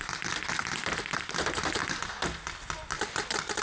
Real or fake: real